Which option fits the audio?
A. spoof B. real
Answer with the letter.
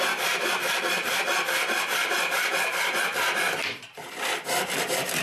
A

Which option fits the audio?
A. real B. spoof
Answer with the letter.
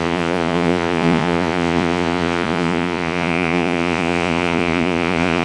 B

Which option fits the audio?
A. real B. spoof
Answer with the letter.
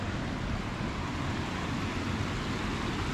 A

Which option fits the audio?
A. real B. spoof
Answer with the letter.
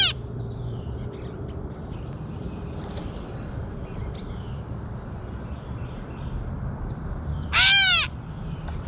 B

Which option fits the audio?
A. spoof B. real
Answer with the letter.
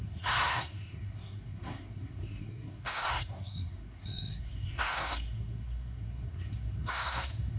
A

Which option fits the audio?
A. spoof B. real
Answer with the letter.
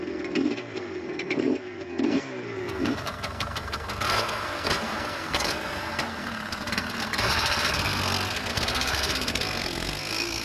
A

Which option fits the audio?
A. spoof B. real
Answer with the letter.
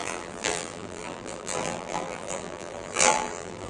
A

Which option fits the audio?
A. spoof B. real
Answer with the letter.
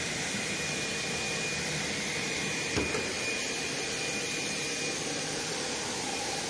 A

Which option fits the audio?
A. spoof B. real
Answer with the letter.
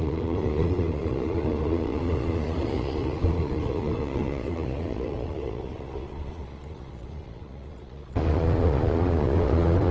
A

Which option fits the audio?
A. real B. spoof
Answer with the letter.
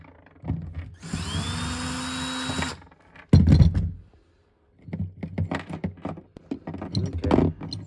A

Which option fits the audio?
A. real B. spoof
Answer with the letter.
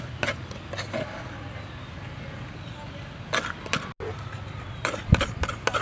A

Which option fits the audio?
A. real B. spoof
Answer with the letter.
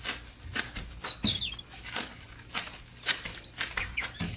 A